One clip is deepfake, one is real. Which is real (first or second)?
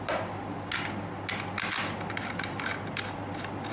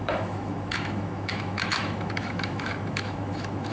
first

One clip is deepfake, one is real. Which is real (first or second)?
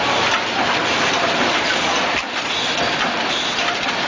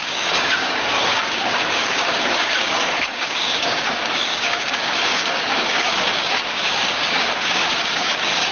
first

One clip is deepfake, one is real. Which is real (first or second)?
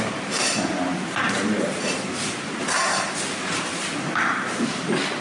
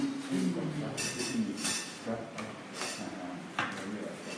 second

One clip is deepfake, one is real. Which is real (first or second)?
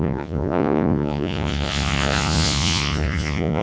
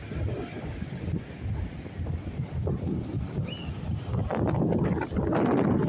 second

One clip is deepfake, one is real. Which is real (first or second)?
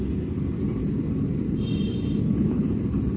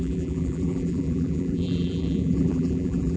first